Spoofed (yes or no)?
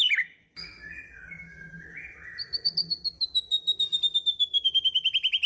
no